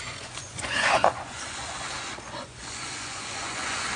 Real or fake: fake